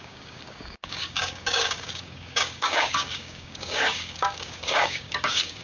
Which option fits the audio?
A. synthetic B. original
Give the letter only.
A